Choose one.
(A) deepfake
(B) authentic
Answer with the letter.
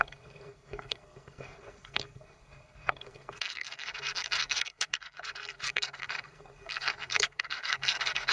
A